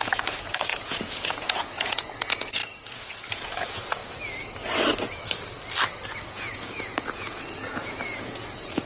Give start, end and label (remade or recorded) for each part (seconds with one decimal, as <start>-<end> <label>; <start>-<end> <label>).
0.0-4.0 remade; 4.0-6.2 recorded; 6.2-8.9 remade